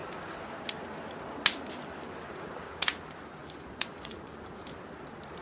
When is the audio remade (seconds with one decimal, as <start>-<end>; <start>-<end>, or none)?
3.4-4.6